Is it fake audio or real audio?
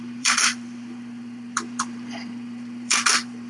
fake